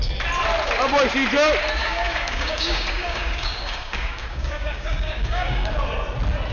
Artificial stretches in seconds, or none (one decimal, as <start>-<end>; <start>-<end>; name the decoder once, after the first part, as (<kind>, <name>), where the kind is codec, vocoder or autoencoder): 1.8-5.7 (codec, DAC)